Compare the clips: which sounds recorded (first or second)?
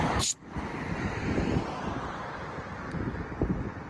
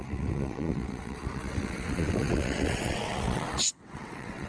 first